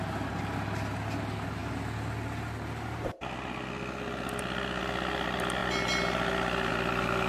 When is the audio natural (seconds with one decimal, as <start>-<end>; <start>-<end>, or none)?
0.0-7.3